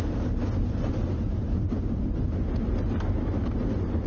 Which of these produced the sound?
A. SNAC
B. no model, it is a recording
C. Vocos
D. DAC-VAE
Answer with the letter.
B